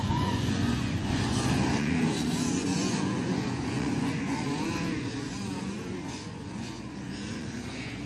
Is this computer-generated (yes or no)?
yes